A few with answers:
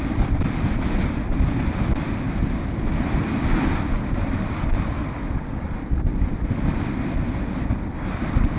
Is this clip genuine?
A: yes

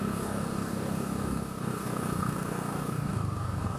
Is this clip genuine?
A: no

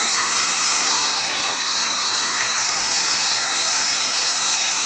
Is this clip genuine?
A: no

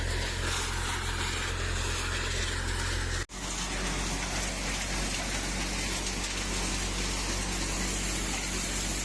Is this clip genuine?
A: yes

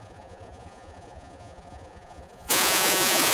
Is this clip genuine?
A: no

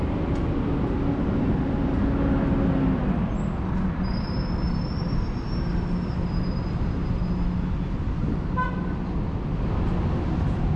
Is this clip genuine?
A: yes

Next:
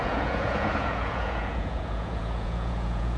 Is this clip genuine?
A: no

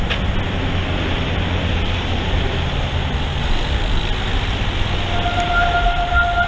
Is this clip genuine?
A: yes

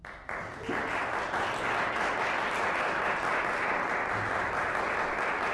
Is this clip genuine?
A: yes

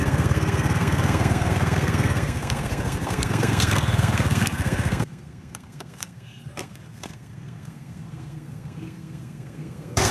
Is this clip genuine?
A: no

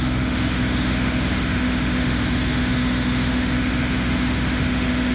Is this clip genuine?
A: no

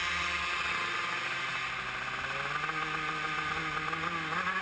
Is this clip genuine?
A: yes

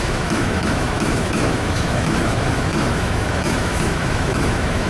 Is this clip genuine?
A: no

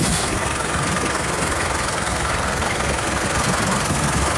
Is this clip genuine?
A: no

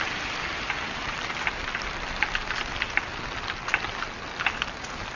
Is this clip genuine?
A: yes